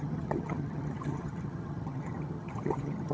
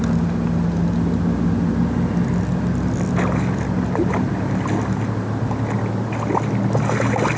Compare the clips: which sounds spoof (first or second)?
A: first